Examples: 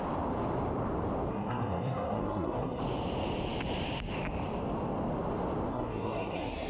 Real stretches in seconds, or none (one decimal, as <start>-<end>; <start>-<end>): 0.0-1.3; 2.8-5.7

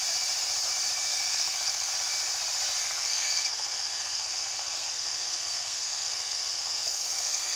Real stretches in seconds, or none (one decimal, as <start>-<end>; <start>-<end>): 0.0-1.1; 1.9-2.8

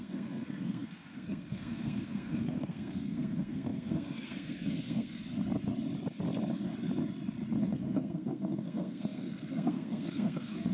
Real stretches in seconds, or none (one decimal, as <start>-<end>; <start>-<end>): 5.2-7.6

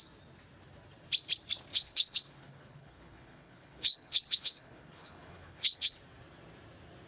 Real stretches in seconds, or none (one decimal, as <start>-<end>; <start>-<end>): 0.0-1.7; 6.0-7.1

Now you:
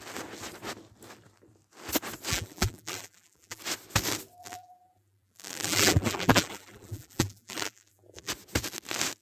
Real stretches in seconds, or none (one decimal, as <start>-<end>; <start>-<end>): 0.0-2.3; 3.6-4.4; 8.3-9.2

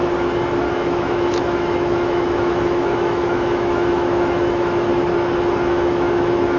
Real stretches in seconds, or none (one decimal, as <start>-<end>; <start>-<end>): 0.0-0.7; 4.9-5.4

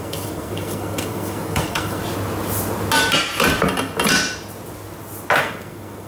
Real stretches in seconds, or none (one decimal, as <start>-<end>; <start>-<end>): 2.0-5.4